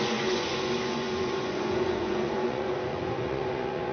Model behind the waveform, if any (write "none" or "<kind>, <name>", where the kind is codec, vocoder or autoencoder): vocoder, Vocos